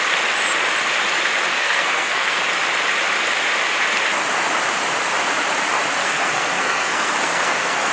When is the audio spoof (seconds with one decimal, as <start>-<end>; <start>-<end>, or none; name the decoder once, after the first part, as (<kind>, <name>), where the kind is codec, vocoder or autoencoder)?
1.5-2.4 (codec, SNAC); 6.0-7.9